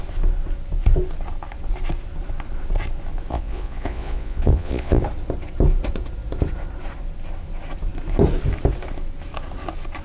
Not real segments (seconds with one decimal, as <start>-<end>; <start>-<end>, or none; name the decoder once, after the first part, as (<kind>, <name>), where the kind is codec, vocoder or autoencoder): 3.3-5.0 (vocoder, Vocos)